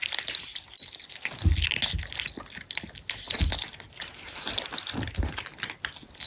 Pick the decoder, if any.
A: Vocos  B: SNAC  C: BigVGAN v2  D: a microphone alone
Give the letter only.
D